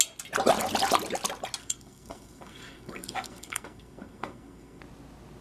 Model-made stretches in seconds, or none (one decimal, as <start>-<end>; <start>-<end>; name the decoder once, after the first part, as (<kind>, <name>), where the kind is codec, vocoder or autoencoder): 1.6-4.8 (codec, SNAC)